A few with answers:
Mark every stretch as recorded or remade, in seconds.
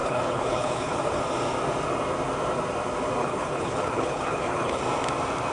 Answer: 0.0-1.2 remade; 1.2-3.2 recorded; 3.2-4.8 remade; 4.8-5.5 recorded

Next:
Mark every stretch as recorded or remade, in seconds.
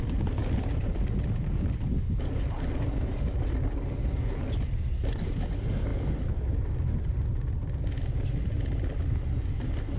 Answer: 0.0-10.0 recorded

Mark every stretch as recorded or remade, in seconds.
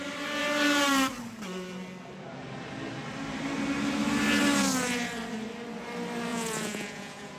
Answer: 0.0-6.3 recorded; 6.3-7.4 remade